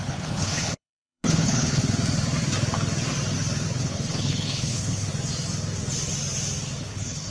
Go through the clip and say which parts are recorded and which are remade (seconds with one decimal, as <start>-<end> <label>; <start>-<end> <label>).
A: 0.0-1.8 remade; 1.8-3.8 recorded; 3.8-5.1 remade; 5.1-6.8 recorded; 6.8-7.3 remade